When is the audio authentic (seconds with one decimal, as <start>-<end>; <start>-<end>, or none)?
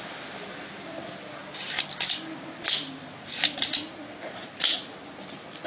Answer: 0.0-5.7